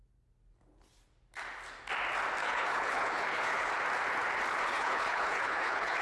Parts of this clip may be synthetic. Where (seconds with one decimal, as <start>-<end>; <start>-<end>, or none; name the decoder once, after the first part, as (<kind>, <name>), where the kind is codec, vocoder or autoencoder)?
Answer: 2.4-3.7 (codec, HILCodec); 4.5-6.0